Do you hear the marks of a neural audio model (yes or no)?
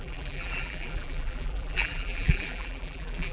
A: yes